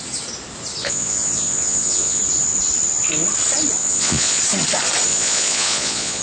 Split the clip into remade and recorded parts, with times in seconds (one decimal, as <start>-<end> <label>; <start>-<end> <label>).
0.0-0.8 recorded; 0.8-2.2 remade; 2.2-3.8 recorded; 3.8-4.4 remade; 4.4-5.1 recorded; 5.1-6.2 remade